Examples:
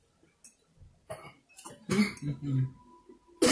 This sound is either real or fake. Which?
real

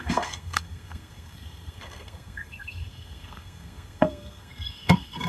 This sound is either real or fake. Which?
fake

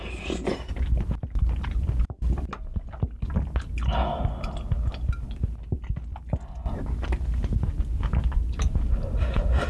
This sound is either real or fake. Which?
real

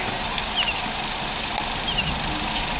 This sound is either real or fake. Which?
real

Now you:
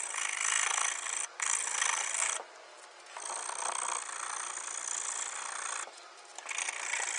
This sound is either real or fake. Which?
real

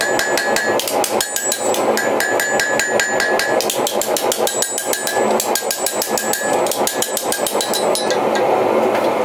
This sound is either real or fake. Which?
real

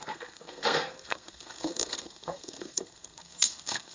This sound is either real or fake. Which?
fake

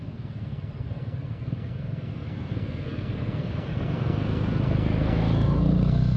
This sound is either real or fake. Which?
fake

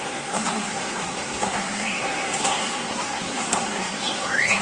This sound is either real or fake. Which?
fake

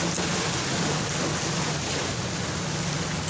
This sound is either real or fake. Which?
real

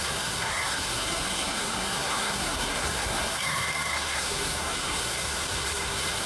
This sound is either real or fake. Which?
fake